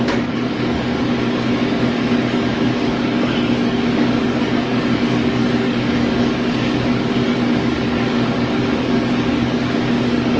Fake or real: fake